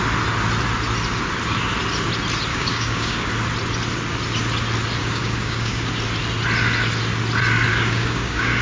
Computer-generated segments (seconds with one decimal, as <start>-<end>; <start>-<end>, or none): 2.5-3.3; 5.0-5.9; 7.7-8.6